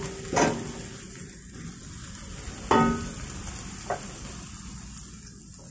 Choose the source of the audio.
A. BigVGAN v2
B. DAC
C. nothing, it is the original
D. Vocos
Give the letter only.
C